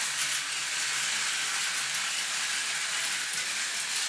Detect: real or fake real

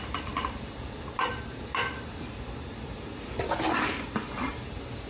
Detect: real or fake fake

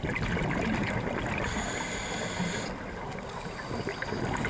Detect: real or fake real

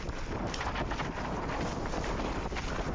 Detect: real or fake fake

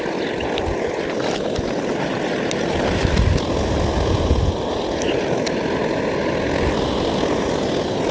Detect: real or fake real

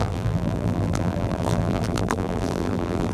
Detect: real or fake fake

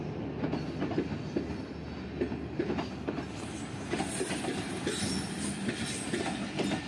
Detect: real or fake real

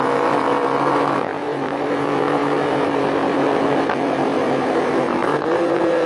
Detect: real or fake fake